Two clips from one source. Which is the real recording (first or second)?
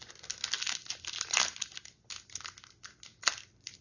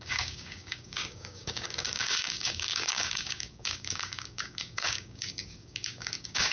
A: first